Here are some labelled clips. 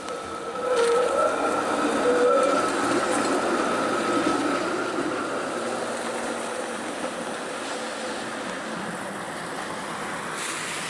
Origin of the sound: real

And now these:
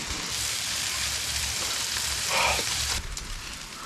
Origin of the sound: fake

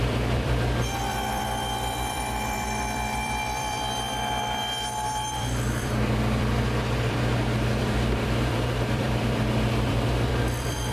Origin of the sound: fake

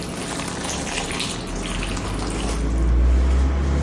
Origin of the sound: real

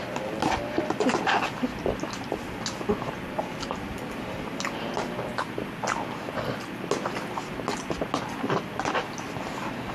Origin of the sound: real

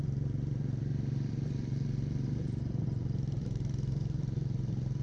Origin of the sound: fake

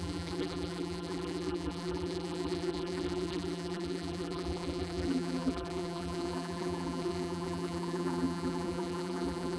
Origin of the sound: fake